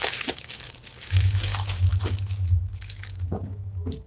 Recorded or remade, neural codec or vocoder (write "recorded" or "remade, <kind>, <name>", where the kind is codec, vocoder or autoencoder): remade, codec, DAC